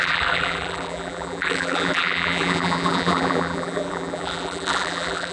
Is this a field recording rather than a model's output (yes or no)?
no